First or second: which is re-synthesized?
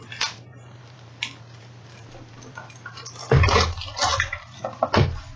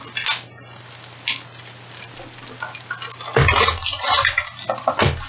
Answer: first